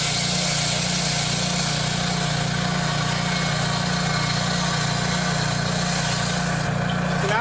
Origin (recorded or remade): recorded